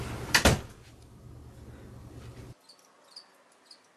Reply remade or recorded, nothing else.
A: recorded